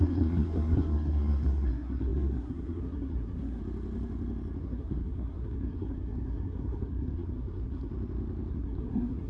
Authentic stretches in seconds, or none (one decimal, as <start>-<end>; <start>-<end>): 3.6-4.6; 7.9-8.5